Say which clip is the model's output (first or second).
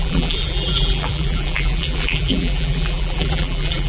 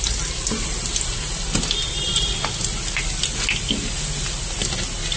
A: first